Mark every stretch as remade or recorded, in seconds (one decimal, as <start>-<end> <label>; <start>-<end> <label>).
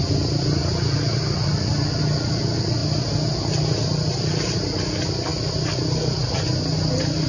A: 0.0-7.3 recorded